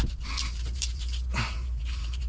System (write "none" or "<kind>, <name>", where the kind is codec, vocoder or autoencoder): vocoder, BigVGAN v2